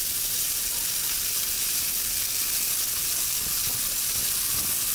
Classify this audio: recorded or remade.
recorded